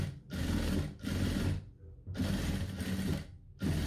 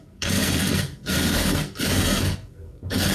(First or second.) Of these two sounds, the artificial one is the second